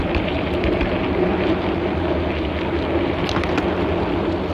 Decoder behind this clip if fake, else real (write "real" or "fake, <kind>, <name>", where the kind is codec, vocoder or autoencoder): real